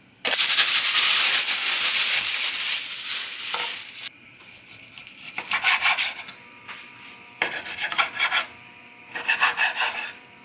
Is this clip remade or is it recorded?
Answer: remade